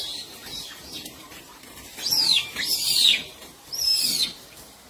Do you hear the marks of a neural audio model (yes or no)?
yes